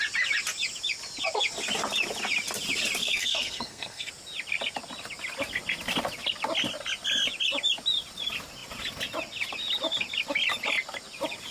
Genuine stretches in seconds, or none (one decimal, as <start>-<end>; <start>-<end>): 0.0-3.0; 4.1-11.5